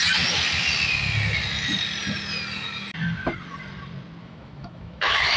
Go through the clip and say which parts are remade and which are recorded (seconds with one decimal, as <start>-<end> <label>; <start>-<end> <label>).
0.0-4.2 recorded; 4.2-5.4 remade